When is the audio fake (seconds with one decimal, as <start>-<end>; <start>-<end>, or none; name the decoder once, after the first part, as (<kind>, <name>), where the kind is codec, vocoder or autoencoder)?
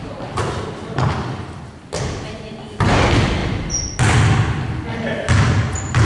3.4-3.9 (vocoder, BigVGAN v2)